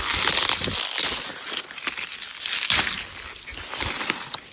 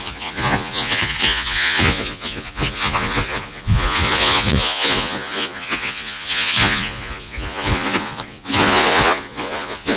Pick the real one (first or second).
first